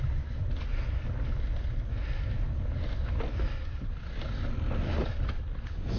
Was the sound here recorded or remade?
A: recorded